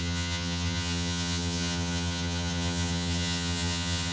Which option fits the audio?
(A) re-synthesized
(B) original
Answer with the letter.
A